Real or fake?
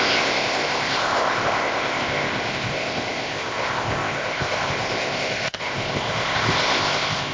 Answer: fake